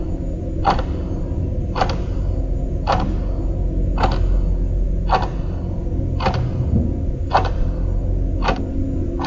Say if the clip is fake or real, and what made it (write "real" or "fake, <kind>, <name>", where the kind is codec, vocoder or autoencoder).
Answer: real